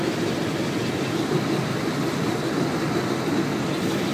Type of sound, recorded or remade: recorded